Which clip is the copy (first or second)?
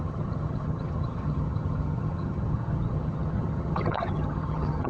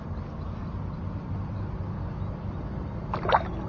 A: first